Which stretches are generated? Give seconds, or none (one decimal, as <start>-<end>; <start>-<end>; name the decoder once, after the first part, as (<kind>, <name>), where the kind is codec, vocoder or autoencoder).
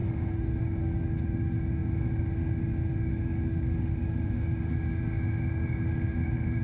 0.0-6.6 (autoencoder, DAC-VAE)